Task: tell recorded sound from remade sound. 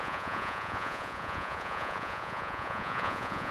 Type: remade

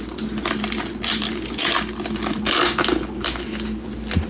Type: recorded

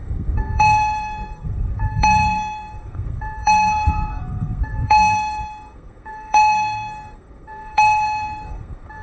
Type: remade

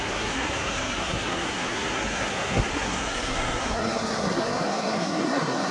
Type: remade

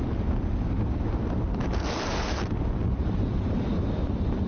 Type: recorded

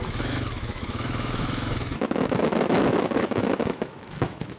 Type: remade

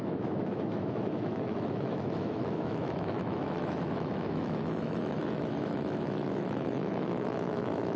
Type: remade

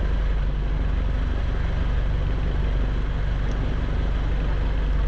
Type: recorded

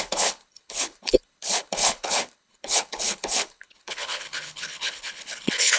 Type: remade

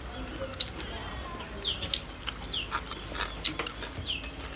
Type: recorded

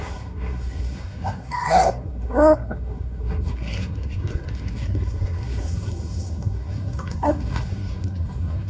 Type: remade